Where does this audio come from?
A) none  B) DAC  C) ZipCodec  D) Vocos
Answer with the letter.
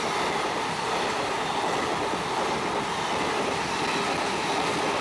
A